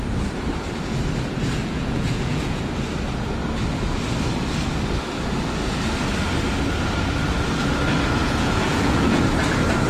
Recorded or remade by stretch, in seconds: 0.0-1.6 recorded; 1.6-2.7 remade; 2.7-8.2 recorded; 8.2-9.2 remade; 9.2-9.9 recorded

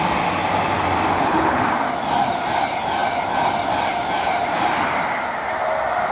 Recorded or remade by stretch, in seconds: 0.0-1.1 recorded; 1.1-1.6 remade; 1.6-6.1 recorded

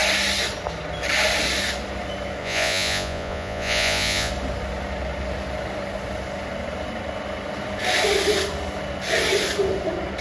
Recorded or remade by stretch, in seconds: 0.0-2.4 recorded; 2.4-4.3 remade; 4.3-10.2 recorded

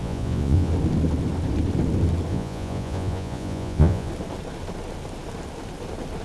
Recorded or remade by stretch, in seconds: 0.0-0.7 remade; 0.7-2.3 recorded; 2.3-4.1 remade; 4.1-6.2 recorded

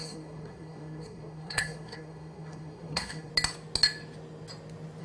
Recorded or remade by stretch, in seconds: 0.0-3.3 remade; 3.3-5.0 recorded

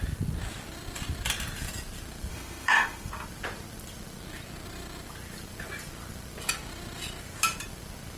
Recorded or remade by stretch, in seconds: 0.0-2.3 recorded; 2.3-3.1 remade; 3.1-8.2 recorded

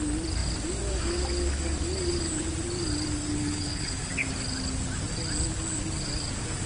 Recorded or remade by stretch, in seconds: 0.0-3.3 recorded; 3.3-4.1 remade; 4.1-6.7 recorded

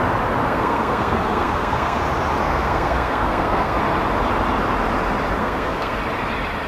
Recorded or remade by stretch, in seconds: 0.0-0.4 recorded; 0.4-2.0 remade; 2.0-2.4 recorded; 2.4-3.8 remade; 3.8-5.4 recorded; 5.4-6.0 remade; 6.0-6.7 recorded